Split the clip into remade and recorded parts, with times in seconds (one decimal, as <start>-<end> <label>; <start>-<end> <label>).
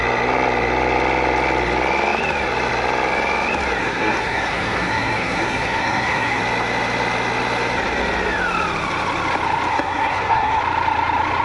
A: 0.0-3.8 recorded; 3.8-6.4 remade; 6.4-9.7 recorded; 9.7-10.6 remade; 10.6-11.4 recorded